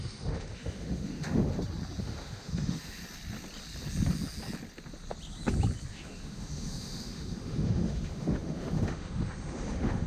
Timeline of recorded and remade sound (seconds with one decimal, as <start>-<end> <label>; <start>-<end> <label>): 0.0-1.5 remade; 1.5-2.0 recorded; 2.0-3.0 remade; 3.0-5.9 recorded; 5.9-10.1 remade